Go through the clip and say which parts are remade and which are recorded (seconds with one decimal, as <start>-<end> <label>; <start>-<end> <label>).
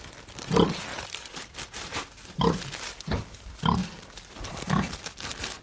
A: 0.0-0.9 recorded; 0.9-3.1 remade; 3.1-3.8 recorded; 3.8-5.6 remade